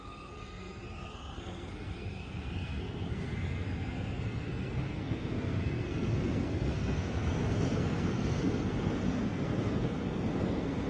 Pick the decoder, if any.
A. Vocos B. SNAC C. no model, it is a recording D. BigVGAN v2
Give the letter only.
B